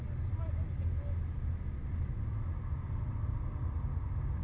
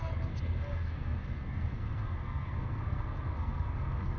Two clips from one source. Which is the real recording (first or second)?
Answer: first